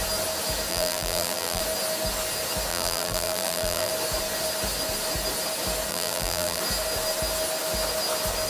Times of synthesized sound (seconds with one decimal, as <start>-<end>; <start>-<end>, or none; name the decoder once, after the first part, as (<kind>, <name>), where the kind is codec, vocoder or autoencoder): 0.7-1.6 (vocoder, BigVGAN v2); 2.7-3.9; 5.9-6.6